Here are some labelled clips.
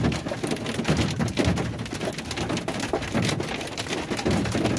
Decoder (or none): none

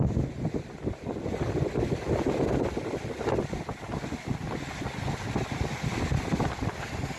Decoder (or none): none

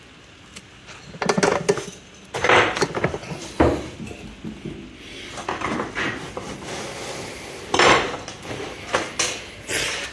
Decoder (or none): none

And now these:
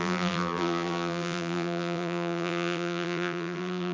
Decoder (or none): vocoder, BigVGAN v2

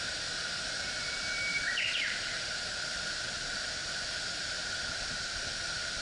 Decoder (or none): vocoder, BigVGAN v2